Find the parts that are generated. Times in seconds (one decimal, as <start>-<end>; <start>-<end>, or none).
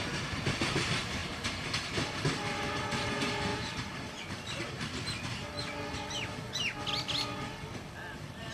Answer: 1.2-2.2; 3.5-4.9